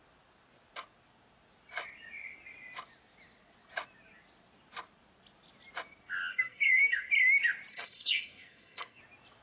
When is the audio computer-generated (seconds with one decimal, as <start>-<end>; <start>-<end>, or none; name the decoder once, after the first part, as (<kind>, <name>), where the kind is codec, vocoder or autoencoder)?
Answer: 6.3-7.1 (codec, SNAC); 7.7-9.0